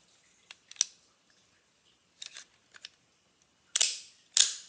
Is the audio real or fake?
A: real